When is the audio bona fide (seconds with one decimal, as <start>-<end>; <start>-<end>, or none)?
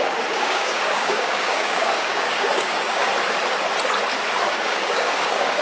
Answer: 3.1-4.5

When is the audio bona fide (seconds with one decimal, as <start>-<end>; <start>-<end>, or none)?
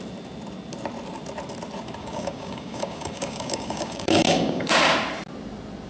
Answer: 0.0-2.0; 4.7-5.9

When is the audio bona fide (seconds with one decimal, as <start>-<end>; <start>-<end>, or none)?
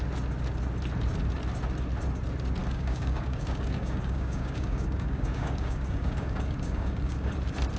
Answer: 0.0-2.6; 7.3-7.8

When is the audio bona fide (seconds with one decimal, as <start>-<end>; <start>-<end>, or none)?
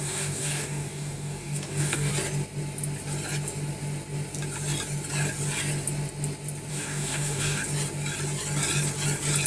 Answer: 2.1-6.7; 7.6-9.5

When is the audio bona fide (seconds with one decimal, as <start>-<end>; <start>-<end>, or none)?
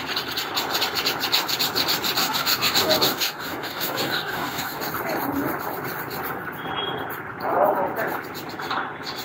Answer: 0.0-2.2; 4.8-9.2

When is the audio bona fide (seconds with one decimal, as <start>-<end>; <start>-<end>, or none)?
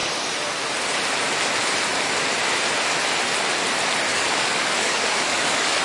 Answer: 0.0-4.1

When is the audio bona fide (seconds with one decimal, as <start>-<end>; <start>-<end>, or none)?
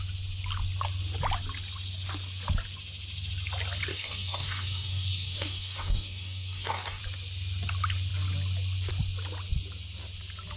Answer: 0.0-3.9; 7.0-10.6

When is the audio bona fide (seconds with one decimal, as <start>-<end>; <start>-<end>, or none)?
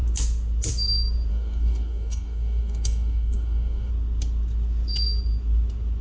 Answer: 0.0-1.3; 3.9-6.0